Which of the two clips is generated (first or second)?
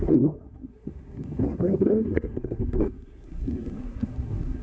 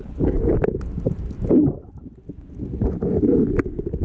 first